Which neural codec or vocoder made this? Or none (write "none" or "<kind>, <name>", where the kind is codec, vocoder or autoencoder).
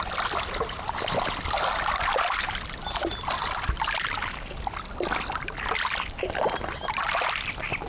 none